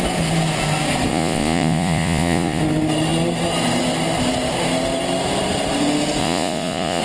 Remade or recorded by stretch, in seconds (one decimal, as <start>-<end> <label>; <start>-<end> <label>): 0.0-1.1 recorded; 1.1-2.6 remade; 2.6-6.2 recorded; 6.2-7.0 remade